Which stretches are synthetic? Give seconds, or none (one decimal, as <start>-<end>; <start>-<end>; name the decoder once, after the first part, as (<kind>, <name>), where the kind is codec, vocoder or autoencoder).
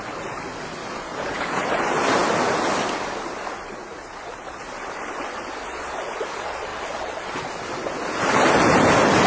1.1-1.6 (vocoder, Vocos)